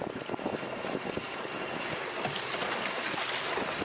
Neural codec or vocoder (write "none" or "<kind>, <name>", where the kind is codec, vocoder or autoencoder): none